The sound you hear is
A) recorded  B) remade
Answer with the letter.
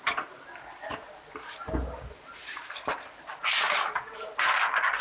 A